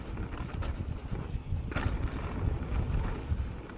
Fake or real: real